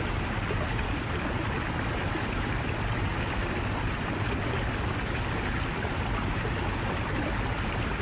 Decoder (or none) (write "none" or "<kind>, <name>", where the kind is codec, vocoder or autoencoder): none